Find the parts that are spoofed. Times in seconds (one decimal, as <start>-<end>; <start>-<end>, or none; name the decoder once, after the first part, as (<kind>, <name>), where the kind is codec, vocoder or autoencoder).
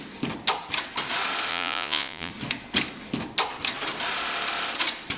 1.5-2.3 (vocoder, Vocos)